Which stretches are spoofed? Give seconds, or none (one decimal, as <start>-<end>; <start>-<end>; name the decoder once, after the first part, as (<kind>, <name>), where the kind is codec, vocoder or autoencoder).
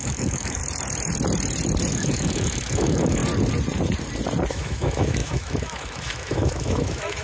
0.0-0.6 (autoencoder, DAC-VAE); 1.9-3.2; 4.5-7.2